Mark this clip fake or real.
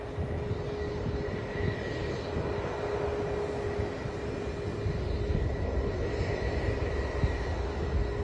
real